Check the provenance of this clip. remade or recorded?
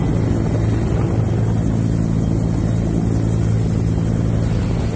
recorded